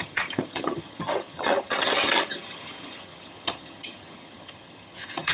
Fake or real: fake